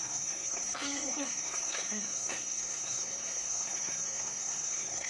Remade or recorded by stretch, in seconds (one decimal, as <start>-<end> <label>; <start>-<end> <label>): 0.0-5.1 remade